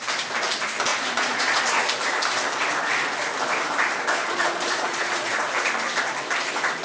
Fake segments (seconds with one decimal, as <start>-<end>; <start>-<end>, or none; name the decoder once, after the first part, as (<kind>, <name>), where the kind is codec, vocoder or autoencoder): 0.9-1.6 (vocoder, Vocos); 4.2-5.3